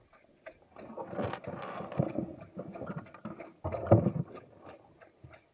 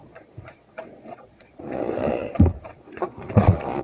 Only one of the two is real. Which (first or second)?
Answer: first